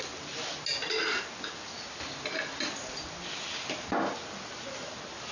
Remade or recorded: recorded